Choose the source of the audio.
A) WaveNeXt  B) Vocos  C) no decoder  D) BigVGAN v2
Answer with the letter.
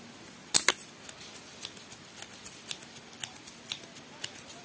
C